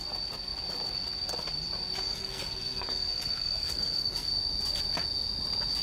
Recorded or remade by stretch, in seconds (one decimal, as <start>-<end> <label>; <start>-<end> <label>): 0.0-2.1 recorded; 2.1-4.3 remade; 4.3-5.8 recorded